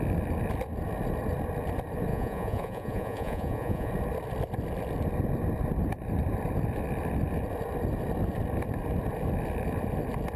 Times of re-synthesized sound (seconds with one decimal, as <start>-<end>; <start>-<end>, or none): 2.1-3.9